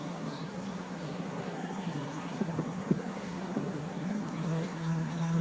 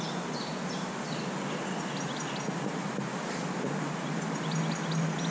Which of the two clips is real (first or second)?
second